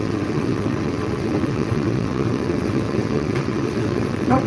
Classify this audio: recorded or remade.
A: remade